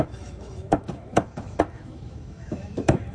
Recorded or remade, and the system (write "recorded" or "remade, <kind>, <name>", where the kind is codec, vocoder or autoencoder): remade, autoencoder, DAC-VAE